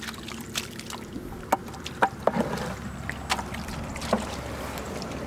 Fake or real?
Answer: real